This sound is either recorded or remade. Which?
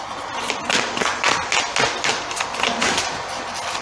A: recorded